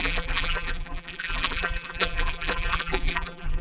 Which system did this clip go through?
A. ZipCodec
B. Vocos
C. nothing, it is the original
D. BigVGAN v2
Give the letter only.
D